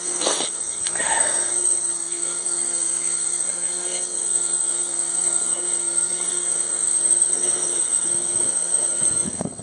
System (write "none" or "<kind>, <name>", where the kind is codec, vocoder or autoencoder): codec, SNAC